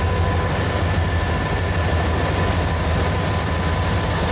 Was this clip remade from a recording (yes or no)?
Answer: no